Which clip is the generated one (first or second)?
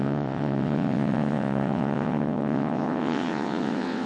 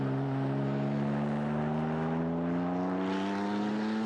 first